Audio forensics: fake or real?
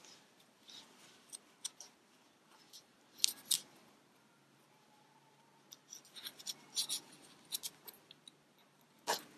real